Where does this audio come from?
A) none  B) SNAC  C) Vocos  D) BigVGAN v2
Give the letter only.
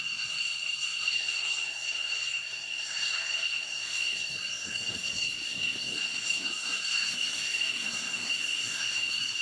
B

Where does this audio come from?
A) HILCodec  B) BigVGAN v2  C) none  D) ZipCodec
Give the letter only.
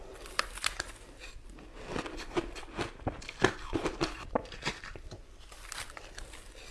B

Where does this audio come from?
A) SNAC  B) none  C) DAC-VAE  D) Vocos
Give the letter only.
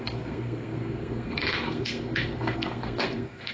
A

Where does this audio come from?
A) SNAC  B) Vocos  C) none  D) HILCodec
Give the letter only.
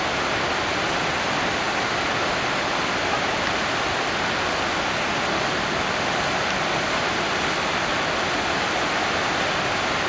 C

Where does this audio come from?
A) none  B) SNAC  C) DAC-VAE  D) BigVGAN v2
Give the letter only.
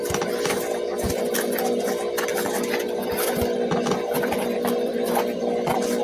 A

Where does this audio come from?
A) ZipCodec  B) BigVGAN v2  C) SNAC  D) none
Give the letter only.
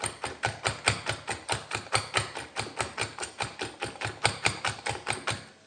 D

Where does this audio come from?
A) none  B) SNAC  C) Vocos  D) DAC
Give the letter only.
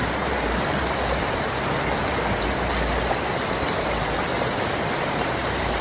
A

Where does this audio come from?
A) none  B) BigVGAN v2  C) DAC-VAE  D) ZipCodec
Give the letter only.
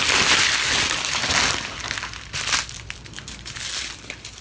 A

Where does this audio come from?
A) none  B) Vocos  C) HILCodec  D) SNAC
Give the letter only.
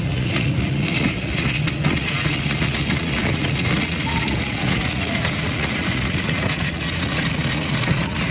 B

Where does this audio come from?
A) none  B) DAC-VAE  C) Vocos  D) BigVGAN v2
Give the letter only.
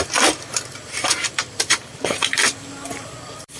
D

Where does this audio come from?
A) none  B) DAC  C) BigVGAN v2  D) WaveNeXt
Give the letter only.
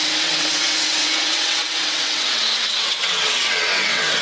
D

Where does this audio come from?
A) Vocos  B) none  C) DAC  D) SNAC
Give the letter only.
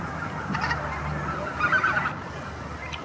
B